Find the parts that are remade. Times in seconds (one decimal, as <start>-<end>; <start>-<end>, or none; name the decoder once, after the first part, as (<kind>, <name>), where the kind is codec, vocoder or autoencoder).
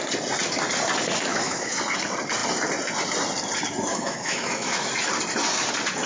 1.3-1.8 (autoencoder, DAC-VAE); 3.9-4.9